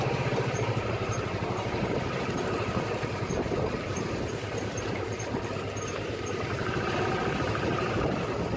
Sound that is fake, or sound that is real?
fake